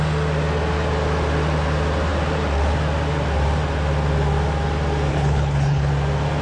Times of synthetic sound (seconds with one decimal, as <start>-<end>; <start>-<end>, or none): 5.1-5.9